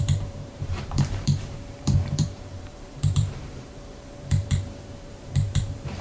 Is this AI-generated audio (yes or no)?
yes